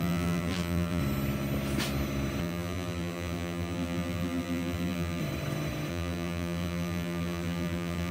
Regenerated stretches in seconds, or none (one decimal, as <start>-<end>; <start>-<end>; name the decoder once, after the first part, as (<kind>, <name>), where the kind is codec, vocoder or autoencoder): 0.0-1.0 (vocoder, BigVGAN v2); 2.4-5.2; 5.9-8.1